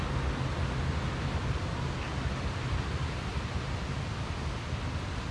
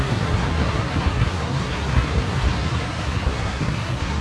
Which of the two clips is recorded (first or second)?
first